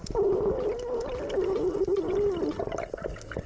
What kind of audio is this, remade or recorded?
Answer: recorded